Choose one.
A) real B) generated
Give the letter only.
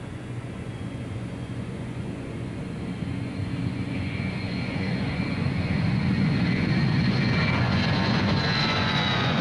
B